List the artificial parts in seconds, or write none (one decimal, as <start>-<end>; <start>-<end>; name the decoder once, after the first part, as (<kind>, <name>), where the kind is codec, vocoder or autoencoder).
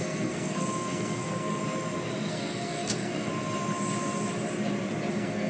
0.0-1.6 (codec, SNAC); 2.3-3.3; 5.1-5.5